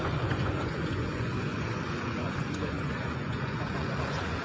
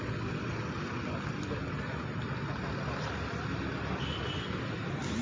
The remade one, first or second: first